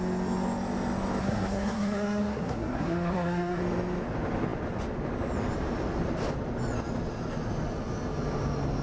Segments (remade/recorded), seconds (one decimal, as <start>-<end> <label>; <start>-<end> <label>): 0.0-1.2 recorded; 1.2-3.6 remade; 3.6-8.8 recorded

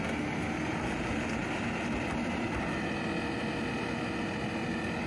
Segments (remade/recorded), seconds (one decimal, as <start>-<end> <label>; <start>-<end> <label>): 0.0-5.1 recorded

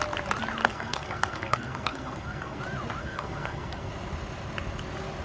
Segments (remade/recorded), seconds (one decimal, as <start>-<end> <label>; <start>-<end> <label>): 0.0-0.6 recorded; 0.6-2.6 remade; 2.6-3.0 recorded; 3.0-3.9 remade; 3.9-5.2 recorded

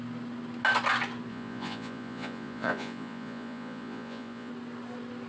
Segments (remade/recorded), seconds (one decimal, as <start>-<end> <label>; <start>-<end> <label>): 0.0-1.3 recorded; 1.3-4.5 remade; 4.5-5.3 recorded

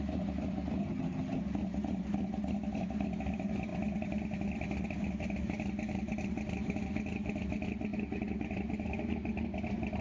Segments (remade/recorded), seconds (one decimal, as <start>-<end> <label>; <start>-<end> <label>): 0.0-0.8 recorded; 0.8-1.4 remade; 1.4-10.0 recorded

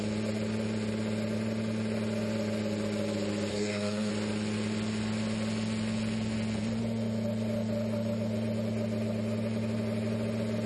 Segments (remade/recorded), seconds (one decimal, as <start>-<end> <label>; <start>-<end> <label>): 0.0-3.5 recorded; 3.5-4.1 remade; 4.1-10.7 recorded

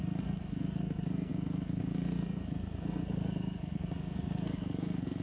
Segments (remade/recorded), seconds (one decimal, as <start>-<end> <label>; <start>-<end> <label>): 0.0-5.2 remade